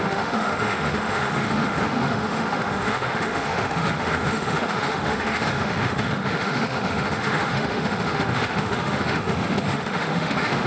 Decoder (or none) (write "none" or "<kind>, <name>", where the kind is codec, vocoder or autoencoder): autoencoder, DAC-VAE